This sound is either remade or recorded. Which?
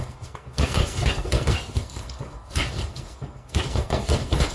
remade